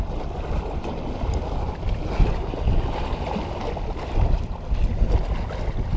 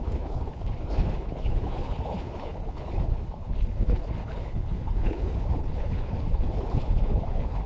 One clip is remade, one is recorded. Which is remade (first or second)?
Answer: second